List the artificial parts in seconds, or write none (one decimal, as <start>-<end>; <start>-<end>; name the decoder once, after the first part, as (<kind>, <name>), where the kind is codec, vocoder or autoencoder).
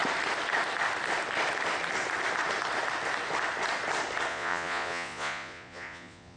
4.3-6.4 (vocoder, Vocos)